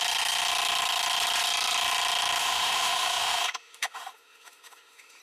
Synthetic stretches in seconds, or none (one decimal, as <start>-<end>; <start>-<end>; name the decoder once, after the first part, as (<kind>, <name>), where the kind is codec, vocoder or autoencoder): 2.4-5.2 (autoencoder, DAC-VAE)